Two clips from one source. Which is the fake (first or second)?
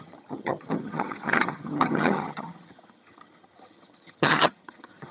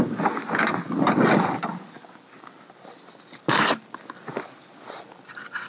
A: first